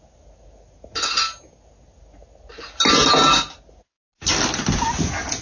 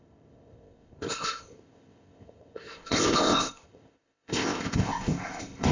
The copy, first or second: second